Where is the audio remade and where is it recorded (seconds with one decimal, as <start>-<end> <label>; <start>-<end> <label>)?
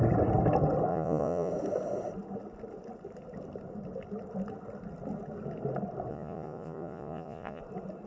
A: 0.0-0.9 recorded; 0.9-1.5 remade; 1.5-6.1 recorded; 6.1-7.6 remade; 7.6-8.1 recorded